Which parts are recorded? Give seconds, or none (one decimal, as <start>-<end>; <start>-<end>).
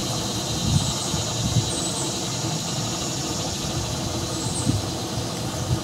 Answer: 0.0-5.8